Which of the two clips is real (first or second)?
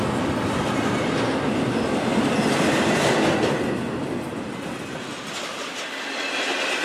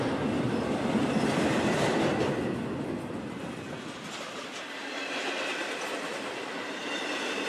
first